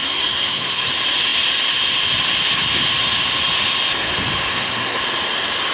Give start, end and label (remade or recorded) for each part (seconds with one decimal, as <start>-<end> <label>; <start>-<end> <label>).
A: 0.0-0.9 remade; 0.9-4.5 recorded; 4.5-5.0 remade; 5.0-5.7 recorded